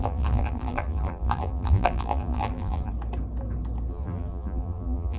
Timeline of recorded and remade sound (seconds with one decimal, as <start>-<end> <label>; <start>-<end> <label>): 0.0-2.9 remade; 2.9-3.9 recorded; 3.9-5.2 remade